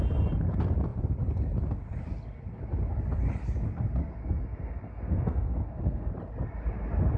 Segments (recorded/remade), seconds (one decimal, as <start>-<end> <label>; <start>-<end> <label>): 0.0-4.2 recorded; 4.2-6.1 remade; 6.1-7.2 recorded